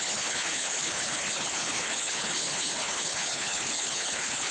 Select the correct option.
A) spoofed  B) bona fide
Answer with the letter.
A